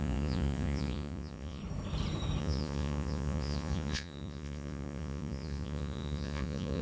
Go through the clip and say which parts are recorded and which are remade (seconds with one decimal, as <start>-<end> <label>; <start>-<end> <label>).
0.0-1.6 remade; 1.6-2.4 recorded; 2.4-6.8 remade